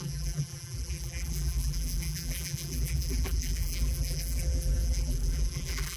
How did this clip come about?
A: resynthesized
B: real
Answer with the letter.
A